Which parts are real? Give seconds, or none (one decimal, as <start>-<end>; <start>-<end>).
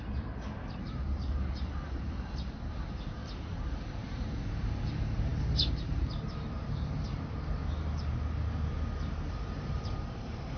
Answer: 7.6-9.3